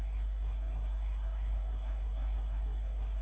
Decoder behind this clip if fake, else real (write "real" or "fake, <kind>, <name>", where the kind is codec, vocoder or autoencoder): fake, codec, SNAC